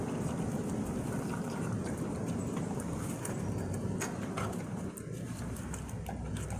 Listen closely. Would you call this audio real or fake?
real